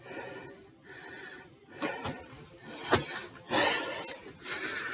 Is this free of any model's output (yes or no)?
yes